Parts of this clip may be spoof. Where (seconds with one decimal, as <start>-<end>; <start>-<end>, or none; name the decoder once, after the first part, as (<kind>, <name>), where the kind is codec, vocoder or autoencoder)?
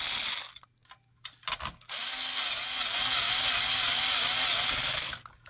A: none